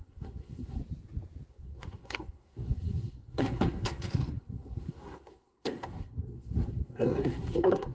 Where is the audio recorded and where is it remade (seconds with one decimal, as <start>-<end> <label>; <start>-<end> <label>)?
0.0-0.8 remade; 0.8-1.5 recorded; 1.5-7.9 remade